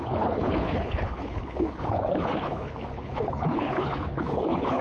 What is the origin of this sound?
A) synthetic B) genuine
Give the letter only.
A